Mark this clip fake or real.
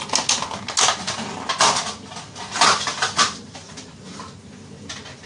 real